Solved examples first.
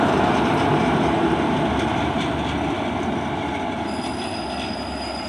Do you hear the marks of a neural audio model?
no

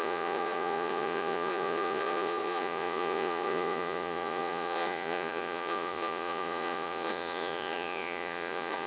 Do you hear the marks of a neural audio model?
yes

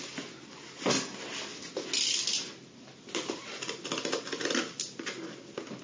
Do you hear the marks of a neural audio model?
no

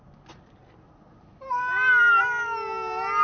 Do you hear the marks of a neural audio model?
no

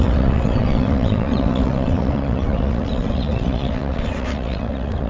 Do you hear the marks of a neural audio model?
yes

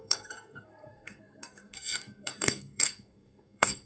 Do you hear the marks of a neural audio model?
yes